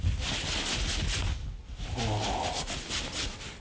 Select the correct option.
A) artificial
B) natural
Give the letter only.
B